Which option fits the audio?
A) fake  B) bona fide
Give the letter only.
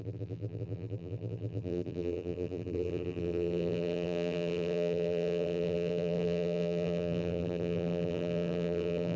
A